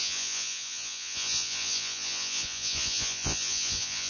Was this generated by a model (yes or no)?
yes